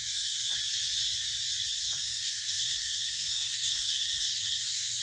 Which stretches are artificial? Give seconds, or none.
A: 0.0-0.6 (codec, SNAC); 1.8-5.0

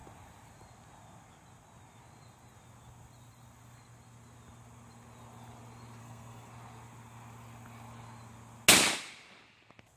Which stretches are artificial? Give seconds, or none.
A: 6.0-6.5 (codec, SNAC)

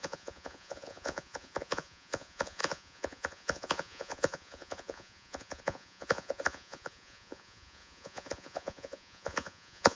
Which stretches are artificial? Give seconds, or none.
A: 0.0-9.9 (vocoder, Vocos)

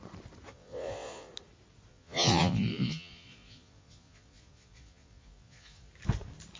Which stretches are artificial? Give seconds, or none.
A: 0.5-1.3 (vocoder, Vocos); 1.9-5.9

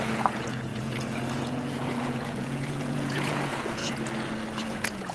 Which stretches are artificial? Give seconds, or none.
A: 0.0-3.8 (vocoder, Vocos); 4.6-5.1

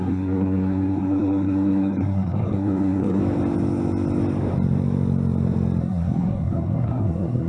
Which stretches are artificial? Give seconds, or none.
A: 0.0-3.2 (codec, SNAC); 5.8-7.5

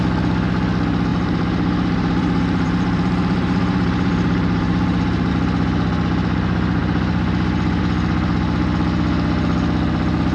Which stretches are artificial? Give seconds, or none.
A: 1.1-5.3 (vocoder, BigVGAN v2)